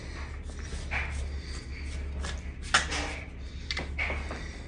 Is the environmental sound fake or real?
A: real